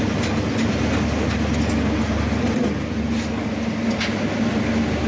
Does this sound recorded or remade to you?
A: recorded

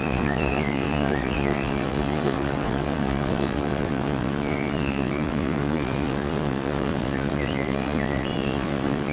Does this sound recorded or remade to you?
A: remade